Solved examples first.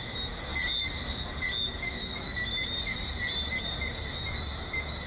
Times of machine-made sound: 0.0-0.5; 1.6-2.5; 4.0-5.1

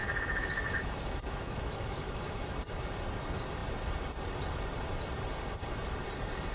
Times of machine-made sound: 0.0-2.8

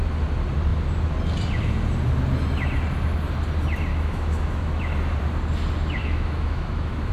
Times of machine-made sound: 3.9-4.8; 6.0-7.1

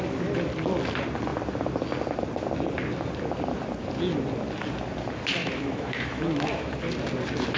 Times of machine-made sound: 5.4-6.7